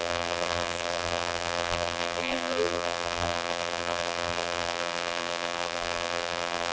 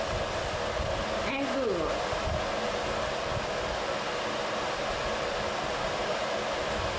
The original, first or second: second